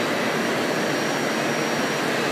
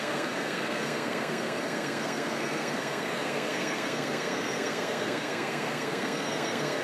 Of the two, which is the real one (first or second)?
first